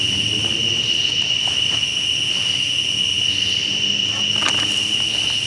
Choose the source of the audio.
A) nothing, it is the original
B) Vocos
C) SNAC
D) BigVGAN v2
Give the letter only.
A